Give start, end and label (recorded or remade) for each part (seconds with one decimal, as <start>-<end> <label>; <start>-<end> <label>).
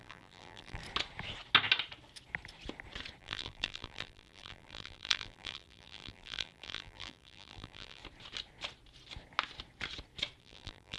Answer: 0.0-0.8 remade; 0.8-3.2 recorded; 3.2-8.0 remade; 8.0-10.4 recorded; 10.4-11.0 remade